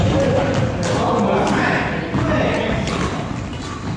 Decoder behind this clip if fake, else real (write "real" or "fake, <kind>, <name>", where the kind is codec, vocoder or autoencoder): real